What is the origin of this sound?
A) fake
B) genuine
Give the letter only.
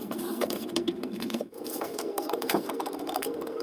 A